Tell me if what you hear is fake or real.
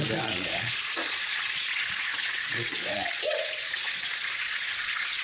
fake